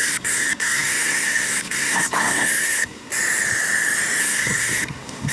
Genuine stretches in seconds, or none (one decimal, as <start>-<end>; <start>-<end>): 3.1-4.2